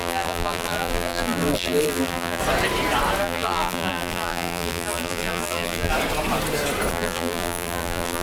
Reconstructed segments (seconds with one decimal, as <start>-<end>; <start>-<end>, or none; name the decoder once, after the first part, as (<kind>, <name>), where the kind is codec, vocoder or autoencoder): 0.0-2.4 (vocoder, BigVGAN v2); 3.2-5.9; 6.9-8.2